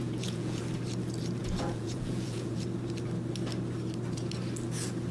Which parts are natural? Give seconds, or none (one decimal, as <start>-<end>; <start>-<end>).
0.6-1.4; 2.6-5.1